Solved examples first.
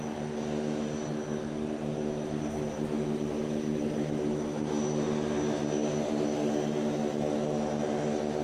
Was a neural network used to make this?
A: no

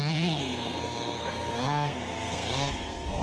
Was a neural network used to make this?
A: yes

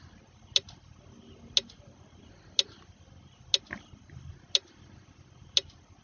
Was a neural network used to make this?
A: no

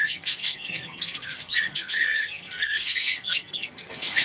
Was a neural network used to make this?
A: yes